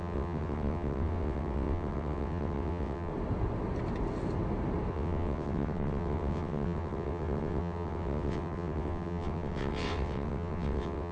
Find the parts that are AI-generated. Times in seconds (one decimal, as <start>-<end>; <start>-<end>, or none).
0.0-3.1; 4.9-11.1